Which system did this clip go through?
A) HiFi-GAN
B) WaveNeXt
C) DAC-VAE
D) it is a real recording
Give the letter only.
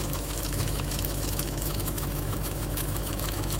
C